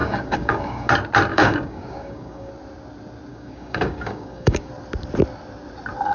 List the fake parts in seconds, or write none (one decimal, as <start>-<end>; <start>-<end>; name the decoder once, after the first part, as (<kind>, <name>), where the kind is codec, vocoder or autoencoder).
0.0-0.9 (codec, DAC); 1.3-2.5; 3.3-4.7